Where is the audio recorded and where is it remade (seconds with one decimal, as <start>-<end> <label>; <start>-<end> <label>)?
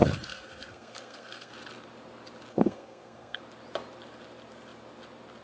0.0-1.5 remade; 1.5-2.5 recorded; 2.5-3.4 remade; 3.4-5.4 recorded